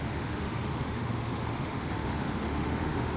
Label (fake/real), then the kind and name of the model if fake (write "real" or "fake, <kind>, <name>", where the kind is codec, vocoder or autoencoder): fake, autoencoder, DAC-VAE